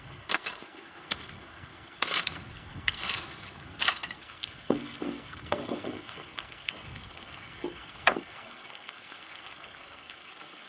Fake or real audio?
fake